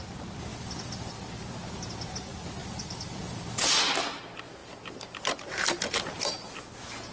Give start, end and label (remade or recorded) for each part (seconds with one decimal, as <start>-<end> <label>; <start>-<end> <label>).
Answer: 0.0-0.5 recorded; 0.5-1.1 remade; 1.1-2.6 recorded; 2.6-3.9 remade; 3.9-7.1 recorded